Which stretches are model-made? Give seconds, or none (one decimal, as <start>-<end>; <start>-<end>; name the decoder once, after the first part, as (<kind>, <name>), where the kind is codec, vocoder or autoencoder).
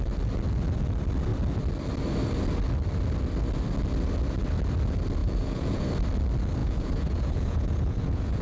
5.2-5.8 (vocoder, Vocos); 6.6-8.4